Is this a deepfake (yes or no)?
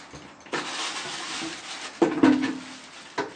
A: no